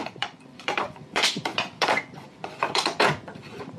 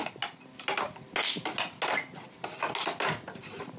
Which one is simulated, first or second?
first